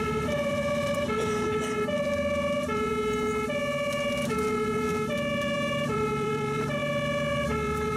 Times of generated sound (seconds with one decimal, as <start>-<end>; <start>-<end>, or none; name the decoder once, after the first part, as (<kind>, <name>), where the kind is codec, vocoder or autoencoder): 0.0-2.9 (vocoder, BigVGAN v2); 4.5-4.9; 5.7-6.8; 7.3-8.0